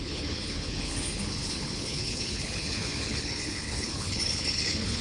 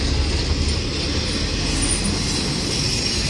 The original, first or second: second